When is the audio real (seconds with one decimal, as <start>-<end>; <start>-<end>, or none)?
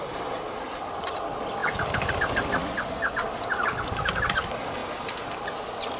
0.0-6.0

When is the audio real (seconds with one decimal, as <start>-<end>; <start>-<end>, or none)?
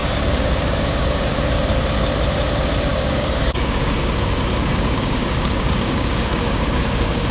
1.2-2.9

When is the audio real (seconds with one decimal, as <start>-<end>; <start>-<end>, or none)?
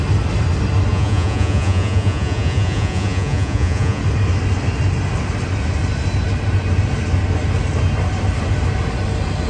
0.0-0.9; 4.0-9.5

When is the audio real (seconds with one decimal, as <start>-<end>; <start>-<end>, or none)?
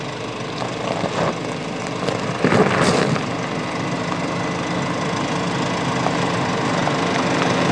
0.0-7.7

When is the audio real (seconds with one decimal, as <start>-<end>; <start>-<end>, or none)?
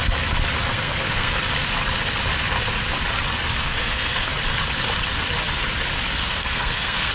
0.0-0.7; 1.3-3.6; 4.3-6.3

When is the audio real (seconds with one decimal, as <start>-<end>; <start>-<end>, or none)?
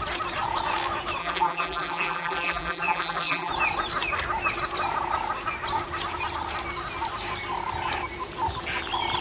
0.0-1.2; 3.5-9.2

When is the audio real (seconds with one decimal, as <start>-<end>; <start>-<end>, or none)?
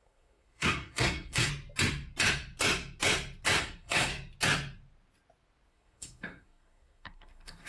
1.5-3.6; 4.1-5.7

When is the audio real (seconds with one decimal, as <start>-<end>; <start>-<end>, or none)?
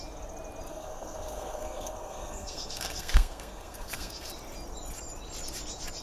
0.0-0.7; 4.3-6.0